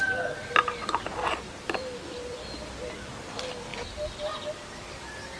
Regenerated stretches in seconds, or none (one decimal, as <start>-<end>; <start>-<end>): 1.1-3.1